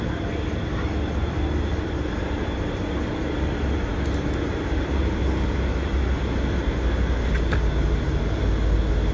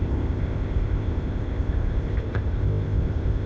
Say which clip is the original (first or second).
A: first